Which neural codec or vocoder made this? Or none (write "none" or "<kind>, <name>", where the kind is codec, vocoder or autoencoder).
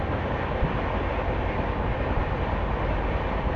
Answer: none